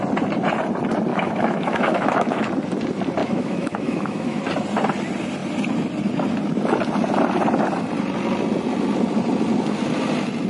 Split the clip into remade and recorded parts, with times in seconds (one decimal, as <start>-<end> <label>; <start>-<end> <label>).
0.0-1.1 recorded; 1.1-2.5 remade; 2.5-3.2 recorded; 3.2-4.4 remade; 4.4-10.5 recorded